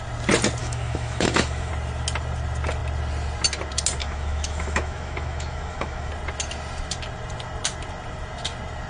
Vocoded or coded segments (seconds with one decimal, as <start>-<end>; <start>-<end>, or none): 0.6-1.7; 4.0-6.1